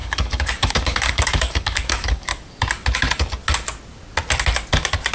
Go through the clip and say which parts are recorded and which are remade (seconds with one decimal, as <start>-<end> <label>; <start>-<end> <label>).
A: 0.0-2.3 remade; 2.3-5.1 recorded